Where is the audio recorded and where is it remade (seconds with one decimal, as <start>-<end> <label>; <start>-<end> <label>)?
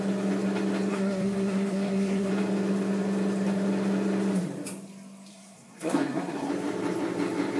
0.0-0.9 recorded; 0.9-2.3 remade; 2.3-5.3 recorded; 5.3-6.5 remade; 6.5-7.6 recorded